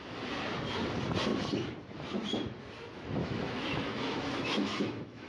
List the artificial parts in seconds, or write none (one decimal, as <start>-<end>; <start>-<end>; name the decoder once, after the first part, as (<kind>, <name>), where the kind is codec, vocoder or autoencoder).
3.2-5.3 (autoencoder, DAC-VAE)